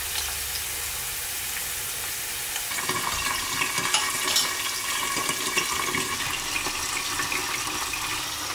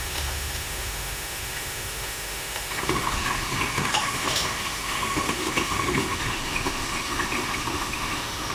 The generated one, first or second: second